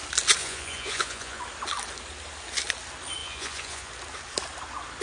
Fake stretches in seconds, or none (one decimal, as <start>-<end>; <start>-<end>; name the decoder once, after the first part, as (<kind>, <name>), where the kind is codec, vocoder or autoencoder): 0.4-1.4 (vocoder, Vocos); 3.2-3.9